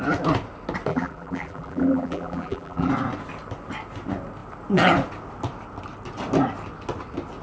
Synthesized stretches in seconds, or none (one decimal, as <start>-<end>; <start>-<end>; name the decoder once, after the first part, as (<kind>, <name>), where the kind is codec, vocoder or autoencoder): 0.9-2.9 (vocoder, BigVGAN v2)